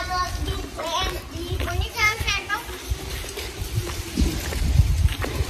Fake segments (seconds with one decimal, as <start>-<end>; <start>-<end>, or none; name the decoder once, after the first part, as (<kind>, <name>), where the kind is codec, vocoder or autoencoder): 2.0-2.5 (codec, SNAC)